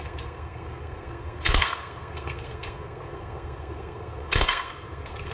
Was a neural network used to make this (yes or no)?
yes